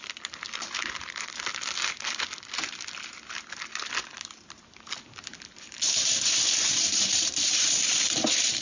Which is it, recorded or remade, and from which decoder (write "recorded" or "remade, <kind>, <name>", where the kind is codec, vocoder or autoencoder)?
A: recorded